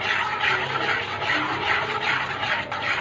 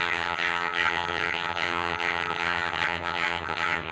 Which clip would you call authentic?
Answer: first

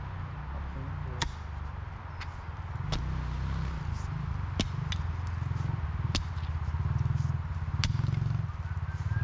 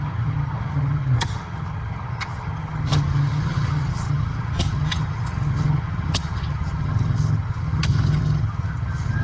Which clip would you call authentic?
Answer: first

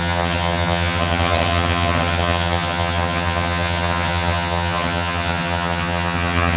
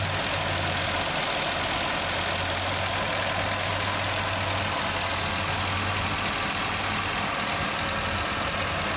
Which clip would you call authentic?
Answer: second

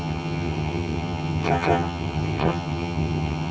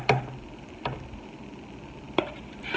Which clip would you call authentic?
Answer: second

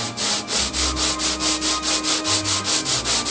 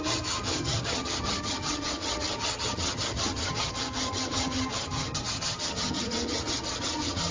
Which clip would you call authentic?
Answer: first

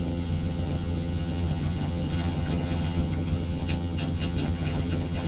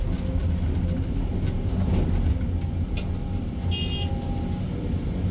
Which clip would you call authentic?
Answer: second